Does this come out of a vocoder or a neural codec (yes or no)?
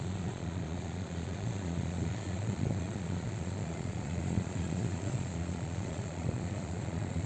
yes